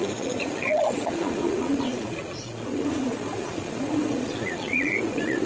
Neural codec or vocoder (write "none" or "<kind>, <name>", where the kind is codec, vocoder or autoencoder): vocoder, Vocos